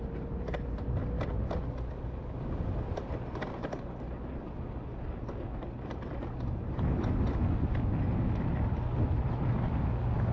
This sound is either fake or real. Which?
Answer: real